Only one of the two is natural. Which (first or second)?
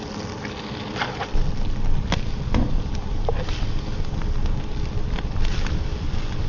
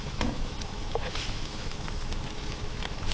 first